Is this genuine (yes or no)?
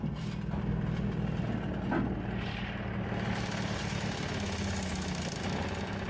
yes